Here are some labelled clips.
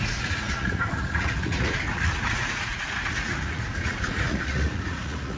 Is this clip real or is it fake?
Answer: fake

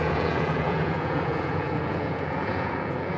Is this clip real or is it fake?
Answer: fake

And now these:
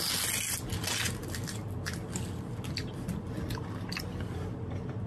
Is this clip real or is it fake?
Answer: real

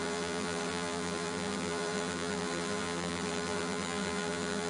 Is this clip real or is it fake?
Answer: fake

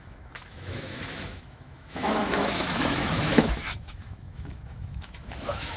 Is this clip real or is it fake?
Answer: fake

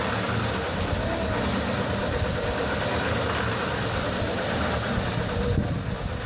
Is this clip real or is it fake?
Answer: real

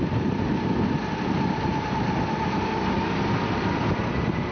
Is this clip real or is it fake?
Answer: real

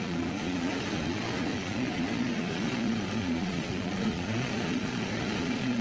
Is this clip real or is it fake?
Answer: fake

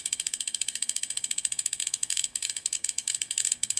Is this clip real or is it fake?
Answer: fake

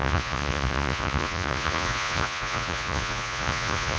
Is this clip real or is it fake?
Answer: fake